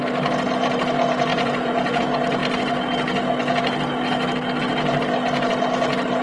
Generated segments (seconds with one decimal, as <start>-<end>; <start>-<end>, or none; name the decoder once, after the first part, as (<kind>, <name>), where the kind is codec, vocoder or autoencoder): 1.3-2.0 (vocoder, Vocos)